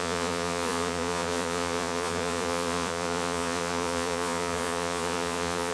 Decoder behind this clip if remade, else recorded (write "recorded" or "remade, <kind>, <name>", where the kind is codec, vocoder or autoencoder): remade, vocoder, Vocos